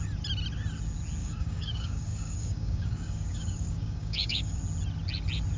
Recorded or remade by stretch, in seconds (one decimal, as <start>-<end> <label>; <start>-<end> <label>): 0.0-1.2 recorded; 1.2-4.6 remade; 4.6-5.6 recorded